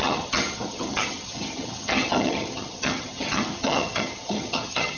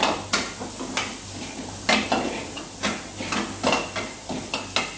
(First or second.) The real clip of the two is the second